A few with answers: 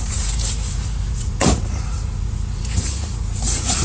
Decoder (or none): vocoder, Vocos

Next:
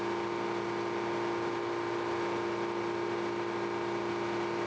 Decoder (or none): none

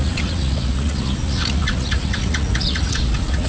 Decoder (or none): vocoder, Vocos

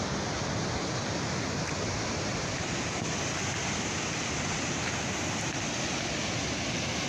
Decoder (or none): none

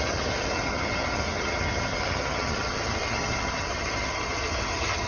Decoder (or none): vocoder, HiFi-GAN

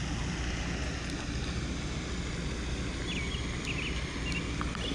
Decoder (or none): none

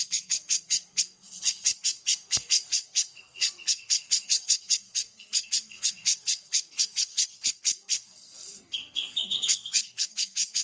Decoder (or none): codec, SNAC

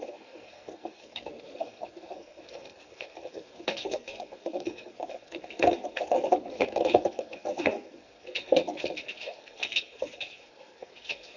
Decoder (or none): codec, SNAC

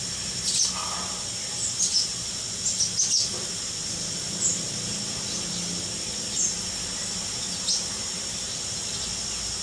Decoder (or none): none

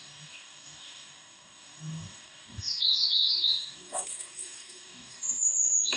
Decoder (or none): codec, DAC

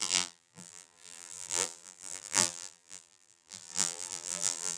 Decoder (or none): vocoder, BigVGAN v2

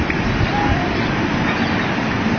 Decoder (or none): none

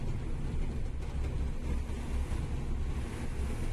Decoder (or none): none